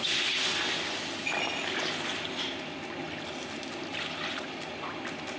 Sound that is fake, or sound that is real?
real